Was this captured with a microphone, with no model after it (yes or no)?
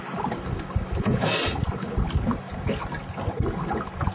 yes